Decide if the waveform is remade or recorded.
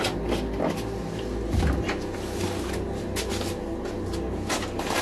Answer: recorded